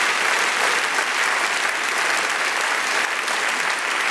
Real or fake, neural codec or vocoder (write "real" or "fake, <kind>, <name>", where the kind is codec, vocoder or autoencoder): fake, vocoder, BigVGAN v2